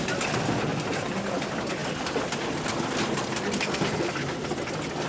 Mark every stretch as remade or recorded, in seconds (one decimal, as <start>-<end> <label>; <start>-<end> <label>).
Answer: 0.0-0.7 recorded; 0.7-1.3 remade; 1.3-5.1 recorded